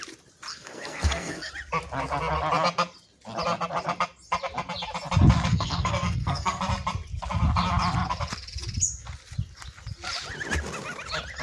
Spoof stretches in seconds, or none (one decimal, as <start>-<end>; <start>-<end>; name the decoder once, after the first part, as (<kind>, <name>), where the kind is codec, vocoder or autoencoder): 0.5-1.5 (codec, SNAC); 5.5-6.6